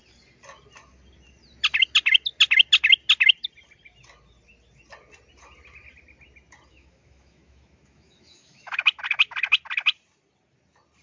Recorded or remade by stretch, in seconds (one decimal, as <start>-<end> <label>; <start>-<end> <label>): 0.0-6.7 recorded; 6.7-8.8 remade; 8.8-11.0 recorded